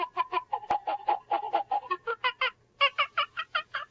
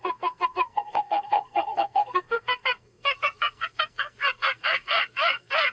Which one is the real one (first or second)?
first